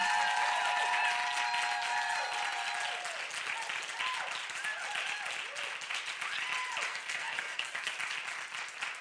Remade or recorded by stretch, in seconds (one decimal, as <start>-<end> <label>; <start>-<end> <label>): 0.0-6.9 recorded; 6.9-7.9 remade; 7.9-9.0 recorded